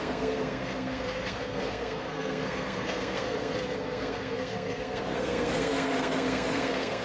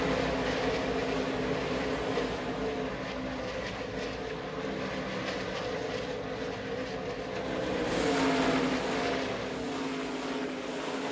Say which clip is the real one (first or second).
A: second